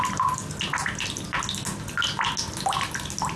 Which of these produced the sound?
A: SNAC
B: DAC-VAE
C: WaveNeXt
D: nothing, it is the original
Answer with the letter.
D